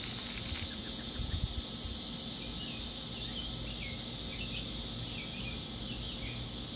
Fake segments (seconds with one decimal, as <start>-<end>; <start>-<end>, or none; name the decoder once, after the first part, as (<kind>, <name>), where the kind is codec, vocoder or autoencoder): 0.8-1.5 (vocoder, Vocos)